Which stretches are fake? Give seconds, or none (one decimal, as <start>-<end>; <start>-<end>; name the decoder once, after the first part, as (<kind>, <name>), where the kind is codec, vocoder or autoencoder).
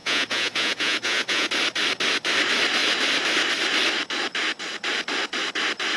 0.0-1.5 (vocoder, Vocos)